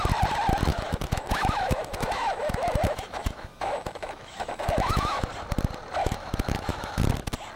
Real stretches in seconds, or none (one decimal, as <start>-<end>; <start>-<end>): 0.0-0.7; 5.3-6.0; 7.0-7.6